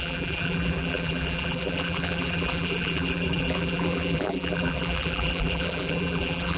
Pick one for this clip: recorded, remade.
remade